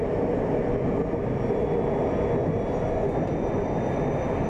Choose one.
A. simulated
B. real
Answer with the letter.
B